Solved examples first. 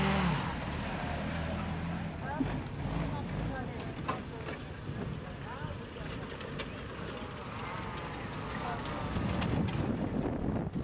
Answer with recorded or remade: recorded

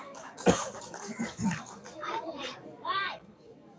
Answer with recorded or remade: remade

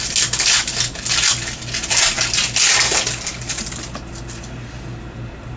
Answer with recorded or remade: recorded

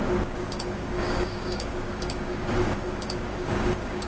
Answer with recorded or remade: remade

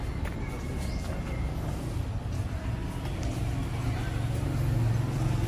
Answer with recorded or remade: recorded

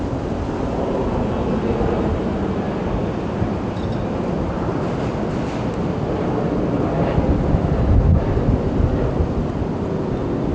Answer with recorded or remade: recorded